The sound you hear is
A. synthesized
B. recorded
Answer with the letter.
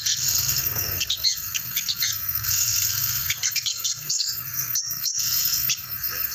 A